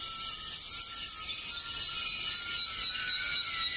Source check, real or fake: real